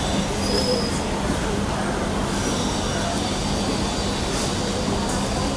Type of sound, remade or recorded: recorded